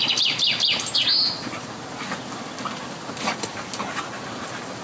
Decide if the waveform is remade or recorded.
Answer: recorded